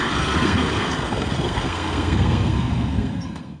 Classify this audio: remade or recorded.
remade